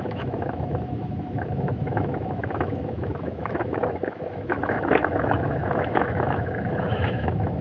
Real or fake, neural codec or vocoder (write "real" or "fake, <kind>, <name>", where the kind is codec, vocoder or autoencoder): fake, autoencoder, DAC-VAE